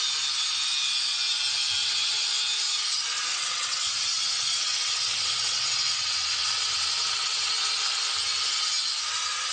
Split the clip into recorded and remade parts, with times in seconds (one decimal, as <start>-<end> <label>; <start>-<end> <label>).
0.0-1.8 recorded; 1.8-2.3 remade; 2.3-3.3 recorded; 3.3-7.5 remade; 7.5-9.5 recorded